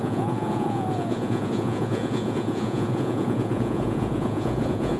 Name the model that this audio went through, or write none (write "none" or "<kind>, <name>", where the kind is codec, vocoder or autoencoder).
vocoder, Vocos